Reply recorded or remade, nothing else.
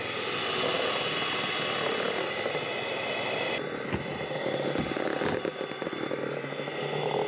recorded